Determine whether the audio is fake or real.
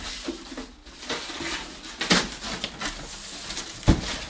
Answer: real